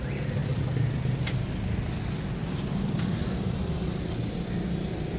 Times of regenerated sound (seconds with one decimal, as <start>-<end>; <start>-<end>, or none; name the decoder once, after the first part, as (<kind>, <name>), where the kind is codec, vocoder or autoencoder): none